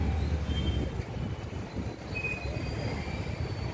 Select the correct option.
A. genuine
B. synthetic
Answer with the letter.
A